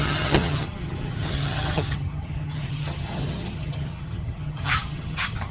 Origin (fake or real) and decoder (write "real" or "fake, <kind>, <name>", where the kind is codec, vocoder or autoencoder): fake, vocoder, HiFi-GAN